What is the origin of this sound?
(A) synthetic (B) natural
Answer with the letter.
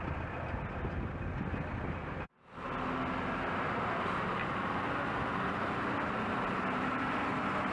B